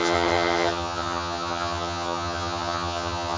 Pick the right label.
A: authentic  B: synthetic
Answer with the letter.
B